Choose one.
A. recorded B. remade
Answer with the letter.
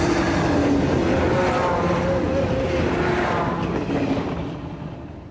A